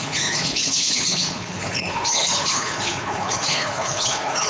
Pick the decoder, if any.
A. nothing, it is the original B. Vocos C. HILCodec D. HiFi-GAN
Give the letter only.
C